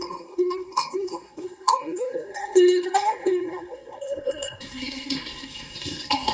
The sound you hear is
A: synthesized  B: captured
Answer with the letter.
A